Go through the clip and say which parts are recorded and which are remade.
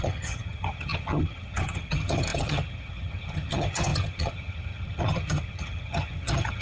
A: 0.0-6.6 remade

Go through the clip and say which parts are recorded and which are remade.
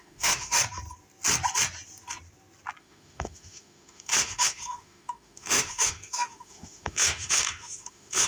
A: 0.0-0.6 remade; 0.6-2.8 recorded; 2.8-8.3 remade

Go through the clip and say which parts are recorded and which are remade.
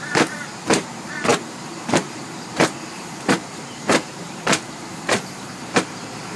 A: 0.0-6.4 remade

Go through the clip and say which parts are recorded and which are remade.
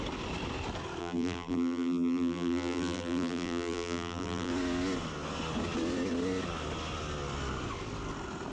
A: 0.0-1.0 recorded; 1.0-4.5 remade; 4.5-8.5 recorded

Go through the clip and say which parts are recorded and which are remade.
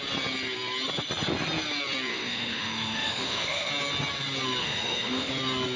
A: 0.0-2.1 recorded; 2.1-3.7 remade; 3.7-4.6 recorded; 4.6-5.3 remade; 5.3-5.8 recorded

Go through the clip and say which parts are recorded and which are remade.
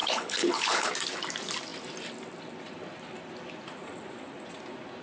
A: 0.0-0.9 remade; 0.9-5.0 recorded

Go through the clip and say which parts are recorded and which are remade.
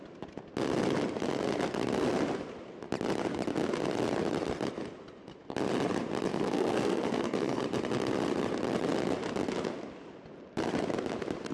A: 0.0-6.3 recorded; 6.3-7.6 remade; 7.6-11.5 recorded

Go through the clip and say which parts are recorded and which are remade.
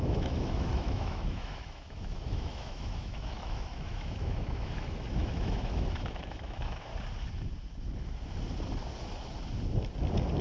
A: 0.0-6.9 remade; 6.9-10.4 recorded